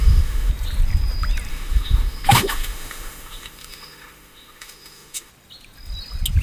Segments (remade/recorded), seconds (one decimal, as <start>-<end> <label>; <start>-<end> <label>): 0.0-0.5 remade; 0.5-1.5 recorded; 1.5-5.3 remade; 5.3-6.4 recorded